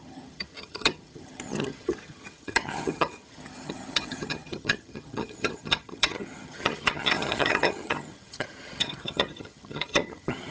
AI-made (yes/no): yes